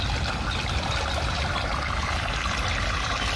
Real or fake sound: real